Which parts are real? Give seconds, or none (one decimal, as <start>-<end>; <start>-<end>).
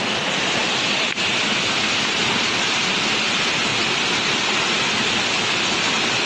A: 0.0-6.3